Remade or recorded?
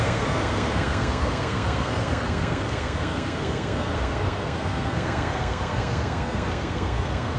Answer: remade